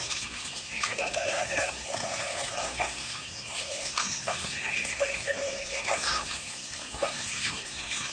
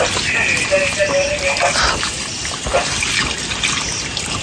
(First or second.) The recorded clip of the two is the second